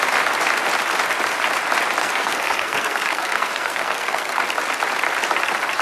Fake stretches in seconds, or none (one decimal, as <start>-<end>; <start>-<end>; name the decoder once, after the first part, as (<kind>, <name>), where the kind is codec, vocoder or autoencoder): 2.0-4.4 (codec, SNAC)